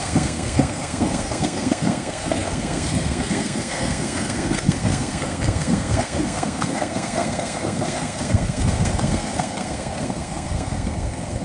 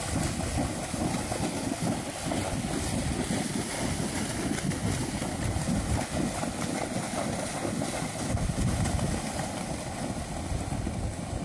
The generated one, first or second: first